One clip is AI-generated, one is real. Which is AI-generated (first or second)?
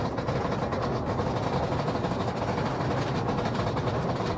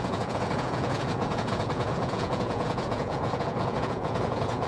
second